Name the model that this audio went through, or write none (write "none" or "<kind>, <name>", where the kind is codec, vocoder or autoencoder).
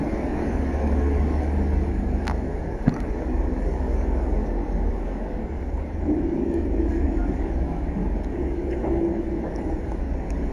codec, DAC